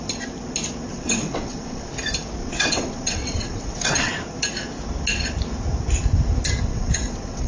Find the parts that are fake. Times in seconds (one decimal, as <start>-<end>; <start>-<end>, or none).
0.9-1.9; 2.4-4.1; 6.7-7.5